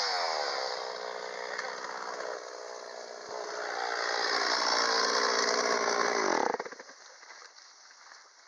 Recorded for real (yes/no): yes